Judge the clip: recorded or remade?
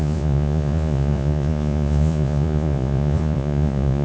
remade